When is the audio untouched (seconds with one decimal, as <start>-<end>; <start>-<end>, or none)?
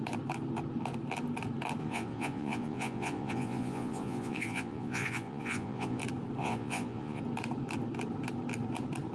0.0-1.8; 6.0-6.4; 7.2-9.1